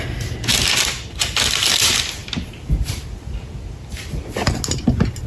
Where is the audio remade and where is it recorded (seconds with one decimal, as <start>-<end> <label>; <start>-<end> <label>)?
0.0-5.3 recorded